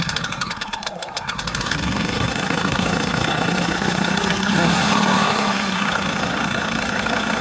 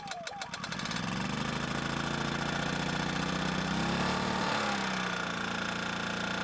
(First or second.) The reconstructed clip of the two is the first